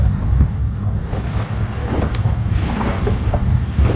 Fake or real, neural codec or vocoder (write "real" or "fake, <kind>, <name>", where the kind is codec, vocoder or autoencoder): fake, codec, DAC